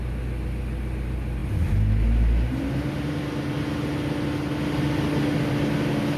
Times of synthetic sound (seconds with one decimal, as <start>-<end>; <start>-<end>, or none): none